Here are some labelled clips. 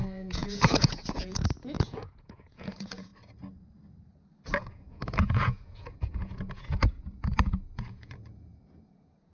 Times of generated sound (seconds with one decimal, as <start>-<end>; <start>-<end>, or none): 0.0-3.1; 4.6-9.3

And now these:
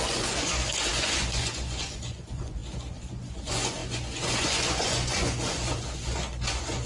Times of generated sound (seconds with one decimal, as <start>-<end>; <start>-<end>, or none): 0.0-6.9

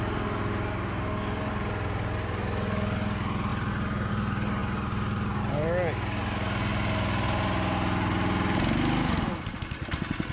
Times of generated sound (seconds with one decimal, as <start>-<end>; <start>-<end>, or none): none